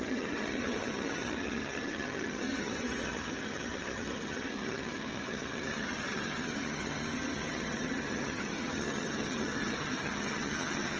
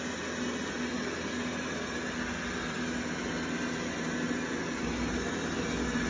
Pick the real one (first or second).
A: second